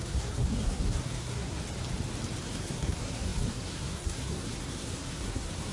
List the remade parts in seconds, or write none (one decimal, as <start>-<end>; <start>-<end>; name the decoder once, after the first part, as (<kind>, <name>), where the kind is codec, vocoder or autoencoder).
0.0-1.6 (codec, SNAC); 2.4-5.7